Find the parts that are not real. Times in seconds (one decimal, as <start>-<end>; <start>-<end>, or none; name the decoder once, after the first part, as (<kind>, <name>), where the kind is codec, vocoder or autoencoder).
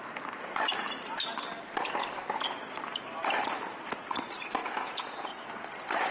4.6-5.5 (vocoder, Vocos)